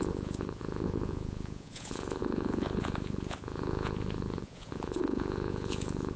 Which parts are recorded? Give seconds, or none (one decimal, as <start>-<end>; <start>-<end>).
none